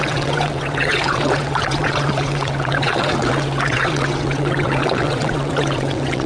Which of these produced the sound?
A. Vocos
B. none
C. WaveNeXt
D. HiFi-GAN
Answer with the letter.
C